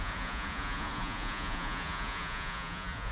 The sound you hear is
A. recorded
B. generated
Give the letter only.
B